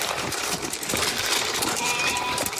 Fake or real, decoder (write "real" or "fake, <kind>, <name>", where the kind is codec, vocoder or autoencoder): fake, vocoder, BigVGAN v2